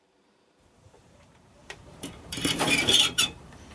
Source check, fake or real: fake